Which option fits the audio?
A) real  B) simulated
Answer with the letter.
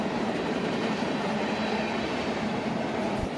B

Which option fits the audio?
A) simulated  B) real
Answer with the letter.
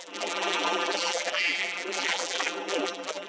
A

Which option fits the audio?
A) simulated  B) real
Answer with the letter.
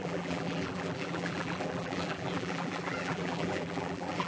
A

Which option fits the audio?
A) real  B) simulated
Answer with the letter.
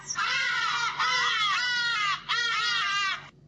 A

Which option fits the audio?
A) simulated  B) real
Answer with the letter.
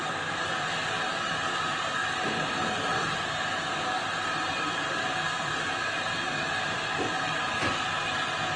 A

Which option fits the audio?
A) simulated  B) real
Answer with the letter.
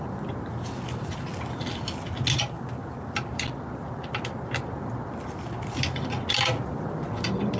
B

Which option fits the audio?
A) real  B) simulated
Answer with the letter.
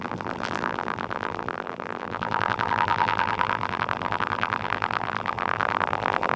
B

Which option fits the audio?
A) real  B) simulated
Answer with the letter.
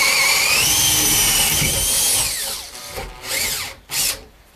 A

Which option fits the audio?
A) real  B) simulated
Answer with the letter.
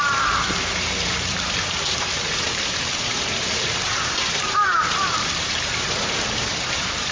B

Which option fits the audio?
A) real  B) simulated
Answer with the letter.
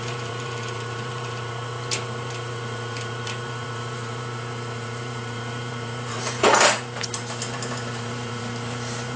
B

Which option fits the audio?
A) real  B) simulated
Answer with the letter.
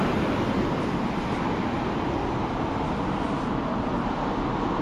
A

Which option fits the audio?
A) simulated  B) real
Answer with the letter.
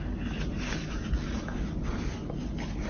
B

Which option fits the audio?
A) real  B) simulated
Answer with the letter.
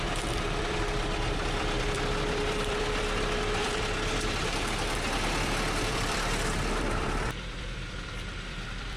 B